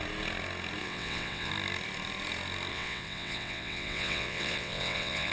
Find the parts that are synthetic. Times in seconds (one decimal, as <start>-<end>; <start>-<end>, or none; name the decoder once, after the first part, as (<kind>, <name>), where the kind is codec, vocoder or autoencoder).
0.8-1.5 (vocoder, WaveNeXt); 2.7-5.3